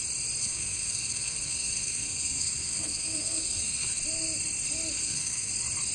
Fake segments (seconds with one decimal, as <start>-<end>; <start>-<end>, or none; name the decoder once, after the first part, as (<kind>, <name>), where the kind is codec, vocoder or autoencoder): 0.4-3.9 (codec, SNAC); 5.0-5.5

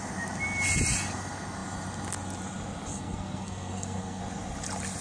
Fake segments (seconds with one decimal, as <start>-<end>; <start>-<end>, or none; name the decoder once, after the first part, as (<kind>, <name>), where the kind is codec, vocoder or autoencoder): 2.9-4.2 (codec, SNAC)

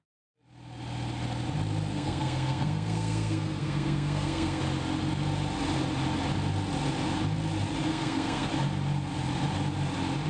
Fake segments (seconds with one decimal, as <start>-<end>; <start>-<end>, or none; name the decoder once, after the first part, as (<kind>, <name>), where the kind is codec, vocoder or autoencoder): 1.9-4.6 (codec, SNAC); 7.9-8.5

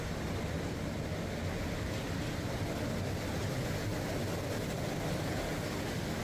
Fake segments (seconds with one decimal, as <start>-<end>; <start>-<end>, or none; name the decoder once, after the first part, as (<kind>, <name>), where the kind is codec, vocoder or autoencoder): none